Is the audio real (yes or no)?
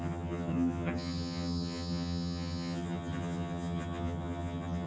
no